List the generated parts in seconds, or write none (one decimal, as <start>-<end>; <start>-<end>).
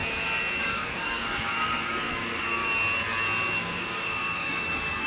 0.6-2.6; 3.6-5.1